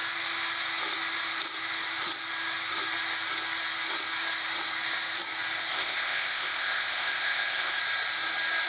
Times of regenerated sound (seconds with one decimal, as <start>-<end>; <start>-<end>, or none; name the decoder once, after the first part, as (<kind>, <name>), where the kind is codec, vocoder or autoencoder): 5.7-7.8 (codec, ZipCodec)